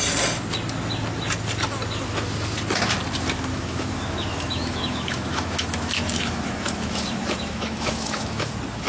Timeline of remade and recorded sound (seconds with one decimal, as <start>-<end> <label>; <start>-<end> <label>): 0.0-3.5 recorded; 3.5-8.5 remade; 8.5-8.9 recorded